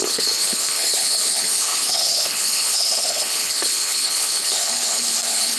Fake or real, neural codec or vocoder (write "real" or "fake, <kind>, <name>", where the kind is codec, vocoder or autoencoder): fake, codec, HILCodec